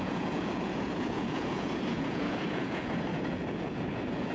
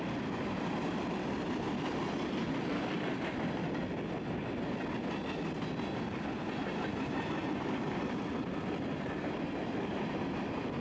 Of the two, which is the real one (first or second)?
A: second